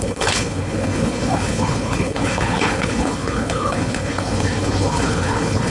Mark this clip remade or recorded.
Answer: remade